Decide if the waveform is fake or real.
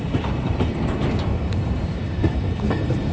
fake